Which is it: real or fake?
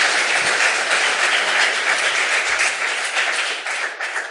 real